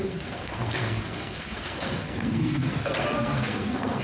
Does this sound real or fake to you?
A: fake